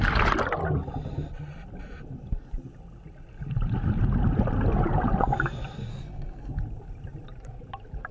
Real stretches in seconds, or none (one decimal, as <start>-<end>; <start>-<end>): 0.0-5.9; 6.5-8.1